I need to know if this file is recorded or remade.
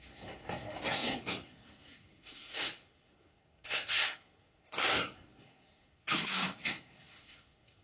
remade